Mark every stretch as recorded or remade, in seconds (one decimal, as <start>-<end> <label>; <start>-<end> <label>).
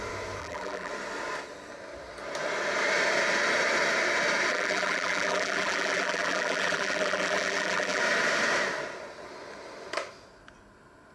0.0-0.4 recorded; 0.4-0.9 remade; 0.9-4.5 recorded; 4.5-8.0 remade; 8.0-11.1 recorded